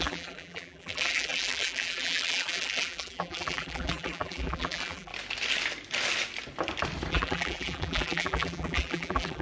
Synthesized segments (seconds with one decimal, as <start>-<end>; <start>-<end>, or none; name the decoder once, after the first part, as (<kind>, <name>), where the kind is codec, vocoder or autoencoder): 0.0-5.1 (vocoder, BigVGAN v2); 7.1-9.4